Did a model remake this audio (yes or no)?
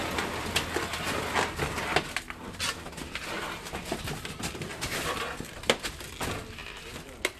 no